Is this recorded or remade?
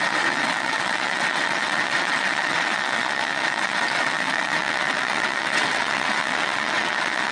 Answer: remade